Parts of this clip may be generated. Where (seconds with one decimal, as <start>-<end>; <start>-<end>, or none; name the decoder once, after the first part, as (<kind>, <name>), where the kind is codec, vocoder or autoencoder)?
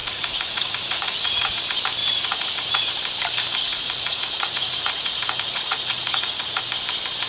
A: 0.0-1.6 (vocoder, Vocos); 2.0-2.9; 3.7-6.6